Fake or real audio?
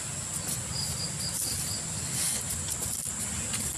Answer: real